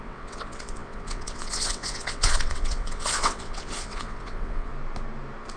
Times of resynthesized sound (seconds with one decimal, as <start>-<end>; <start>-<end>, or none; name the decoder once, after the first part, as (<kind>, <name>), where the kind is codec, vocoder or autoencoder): 0.0-4.7 (vocoder, WaveNeXt)